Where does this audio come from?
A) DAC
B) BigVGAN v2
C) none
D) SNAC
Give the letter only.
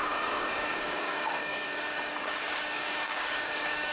A